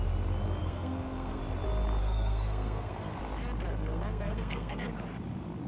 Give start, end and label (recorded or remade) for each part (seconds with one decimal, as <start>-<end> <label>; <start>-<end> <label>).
0.0-0.6 recorded; 0.6-1.4 remade; 1.4-2.0 recorded; 2.0-3.2 remade; 3.2-3.7 recorded; 3.7-4.9 remade; 4.9-5.7 recorded